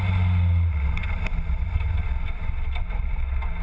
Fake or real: real